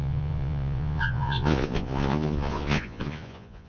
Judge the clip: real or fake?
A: fake